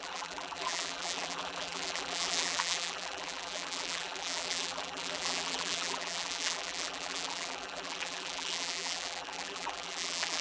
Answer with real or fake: fake